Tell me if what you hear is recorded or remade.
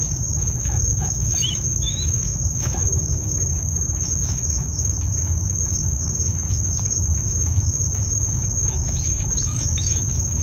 remade